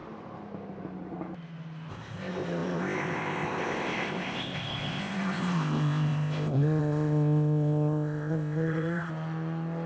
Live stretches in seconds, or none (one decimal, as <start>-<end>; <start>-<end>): 0.0-1.9; 9.1-9.9